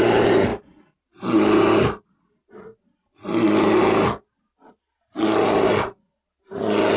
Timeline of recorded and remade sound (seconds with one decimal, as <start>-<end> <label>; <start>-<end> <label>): 0.0-7.0 recorded

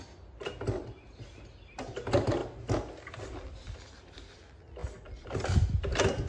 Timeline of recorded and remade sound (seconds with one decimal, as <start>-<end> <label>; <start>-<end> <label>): 0.0-6.3 recorded